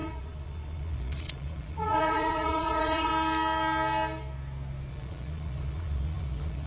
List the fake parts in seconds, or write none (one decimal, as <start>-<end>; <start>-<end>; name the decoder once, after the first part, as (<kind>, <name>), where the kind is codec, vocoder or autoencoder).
0.0-3.1 (vocoder, Vocos); 4.9-6.7